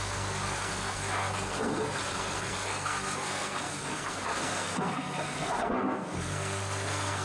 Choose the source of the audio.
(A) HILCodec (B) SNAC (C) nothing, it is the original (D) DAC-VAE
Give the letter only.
B